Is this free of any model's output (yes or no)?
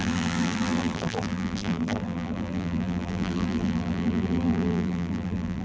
no